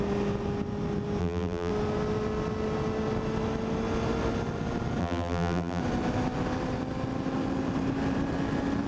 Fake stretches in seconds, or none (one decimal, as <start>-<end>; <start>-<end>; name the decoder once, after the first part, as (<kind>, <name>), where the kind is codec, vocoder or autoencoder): 1.2-1.7 (vocoder, BigVGAN v2); 5.0-5.8